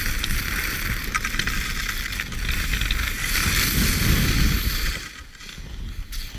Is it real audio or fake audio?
real